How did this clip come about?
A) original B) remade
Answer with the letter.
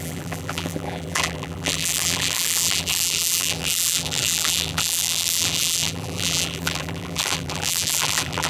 B